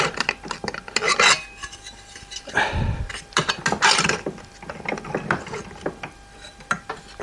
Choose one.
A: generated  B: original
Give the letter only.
B